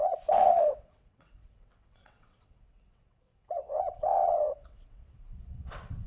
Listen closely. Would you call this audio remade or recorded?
remade